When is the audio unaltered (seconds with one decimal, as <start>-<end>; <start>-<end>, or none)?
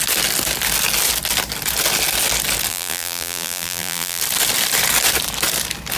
0.0-2.7; 4.2-6.0